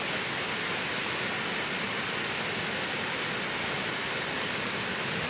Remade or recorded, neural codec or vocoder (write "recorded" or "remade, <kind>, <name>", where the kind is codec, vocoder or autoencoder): recorded